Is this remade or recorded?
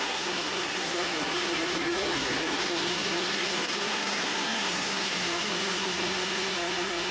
remade